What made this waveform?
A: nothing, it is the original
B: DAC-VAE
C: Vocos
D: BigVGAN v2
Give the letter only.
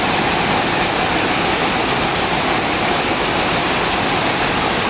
A